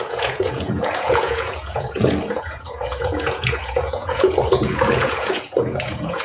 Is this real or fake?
fake